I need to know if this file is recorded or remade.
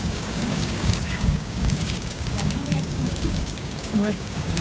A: remade